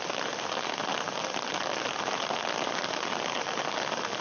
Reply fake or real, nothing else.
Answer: real